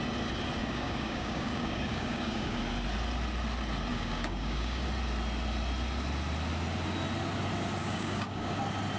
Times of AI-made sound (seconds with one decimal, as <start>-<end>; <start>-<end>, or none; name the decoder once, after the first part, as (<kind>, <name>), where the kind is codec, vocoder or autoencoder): 0.6-2.6 (codec, DAC); 3.9-4.9; 7.8-8.6